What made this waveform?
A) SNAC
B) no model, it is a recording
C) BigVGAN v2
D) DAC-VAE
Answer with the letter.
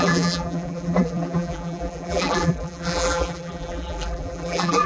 C